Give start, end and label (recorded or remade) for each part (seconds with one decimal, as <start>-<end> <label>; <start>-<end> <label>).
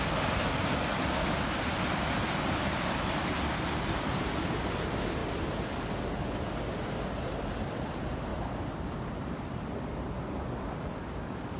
0.0-11.6 recorded